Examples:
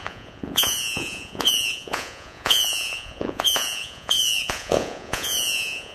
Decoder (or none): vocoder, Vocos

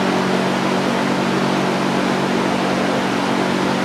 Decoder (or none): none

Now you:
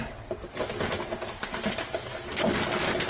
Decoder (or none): none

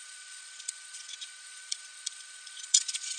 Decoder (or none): vocoder, Vocos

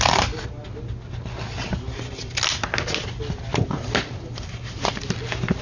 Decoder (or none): none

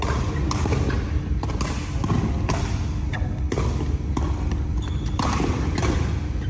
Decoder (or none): none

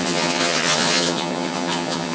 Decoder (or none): vocoder, HiFi-GAN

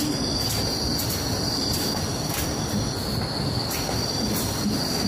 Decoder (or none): none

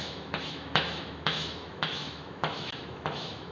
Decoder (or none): autoencoder, DAC-VAE